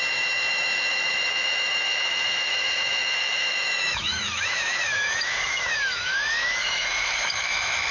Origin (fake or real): fake